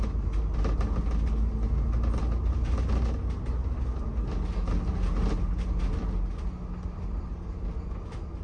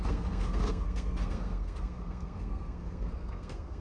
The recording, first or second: first